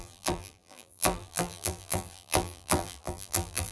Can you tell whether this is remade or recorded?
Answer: remade